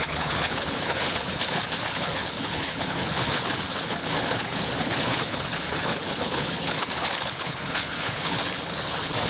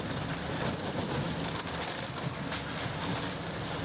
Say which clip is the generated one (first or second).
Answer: first